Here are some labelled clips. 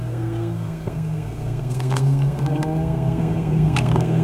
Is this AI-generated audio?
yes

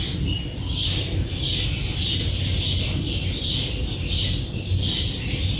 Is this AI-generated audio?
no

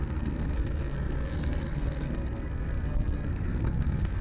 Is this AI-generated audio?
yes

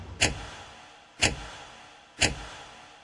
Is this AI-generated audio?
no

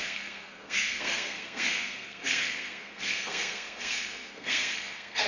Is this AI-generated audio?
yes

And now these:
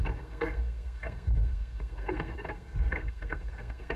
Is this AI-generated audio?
yes